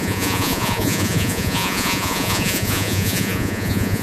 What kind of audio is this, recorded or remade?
remade